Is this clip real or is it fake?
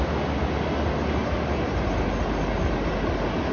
real